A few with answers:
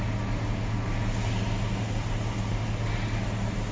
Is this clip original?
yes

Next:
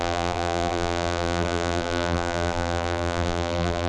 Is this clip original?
no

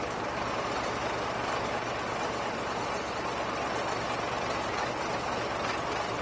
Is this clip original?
yes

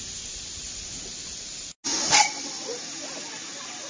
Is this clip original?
yes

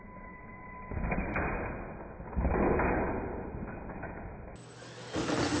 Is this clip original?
yes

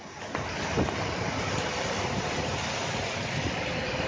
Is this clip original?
yes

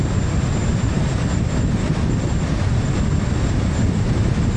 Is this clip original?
yes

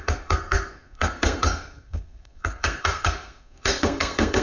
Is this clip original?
no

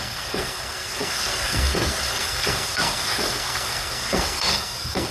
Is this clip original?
no